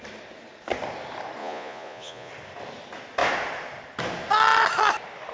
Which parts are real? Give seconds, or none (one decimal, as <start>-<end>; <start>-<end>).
0.0-1.4; 2.3-5.3